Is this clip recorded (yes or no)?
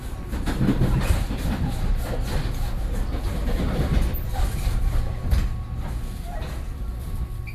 yes